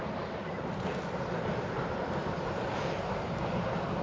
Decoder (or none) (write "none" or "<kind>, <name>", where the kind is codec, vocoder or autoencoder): vocoder, BigVGAN v2